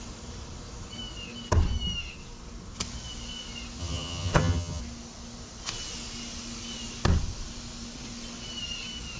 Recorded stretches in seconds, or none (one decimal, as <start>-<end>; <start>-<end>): 0.0-3.8; 4.8-9.2